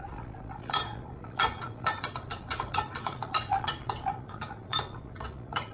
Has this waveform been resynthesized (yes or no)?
yes